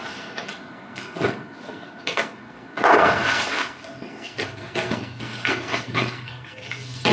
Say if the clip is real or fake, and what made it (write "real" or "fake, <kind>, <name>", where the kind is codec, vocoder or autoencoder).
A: fake, codec, SNAC